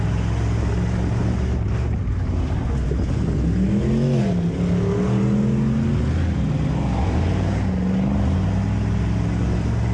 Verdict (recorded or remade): recorded